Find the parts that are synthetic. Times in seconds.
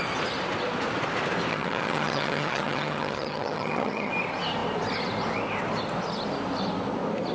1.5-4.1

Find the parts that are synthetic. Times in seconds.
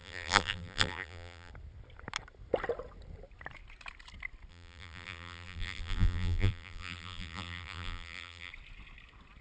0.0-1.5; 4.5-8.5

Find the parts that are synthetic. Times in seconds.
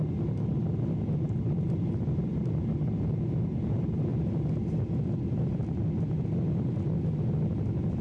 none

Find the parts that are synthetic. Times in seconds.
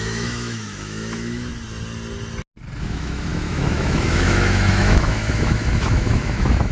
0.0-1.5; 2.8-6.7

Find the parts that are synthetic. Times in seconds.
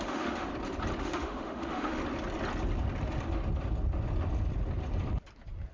0.0-0.5; 1.0-2.0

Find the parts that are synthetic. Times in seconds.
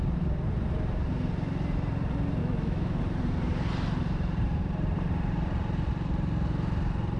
2.4-3.0